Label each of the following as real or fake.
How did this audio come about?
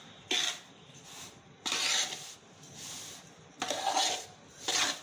real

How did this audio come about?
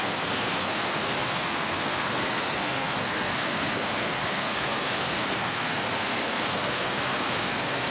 fake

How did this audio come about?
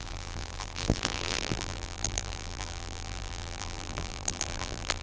fake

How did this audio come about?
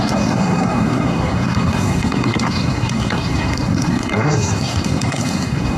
fake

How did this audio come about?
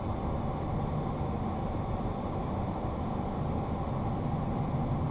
real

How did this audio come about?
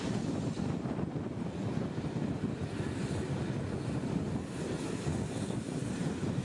real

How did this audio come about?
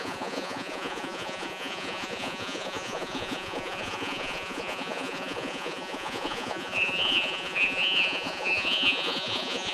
fake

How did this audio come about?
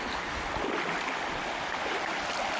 real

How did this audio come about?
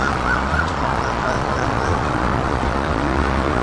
fake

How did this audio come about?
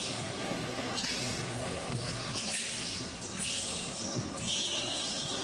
fake